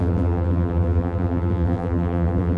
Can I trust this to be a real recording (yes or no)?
no